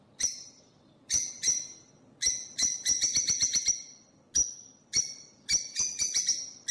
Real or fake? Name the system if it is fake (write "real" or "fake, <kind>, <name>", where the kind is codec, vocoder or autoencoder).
real